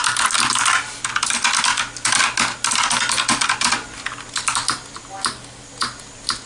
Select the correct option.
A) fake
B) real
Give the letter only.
B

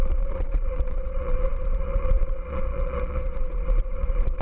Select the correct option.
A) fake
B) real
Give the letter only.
A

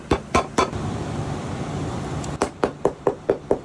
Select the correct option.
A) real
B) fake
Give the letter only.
B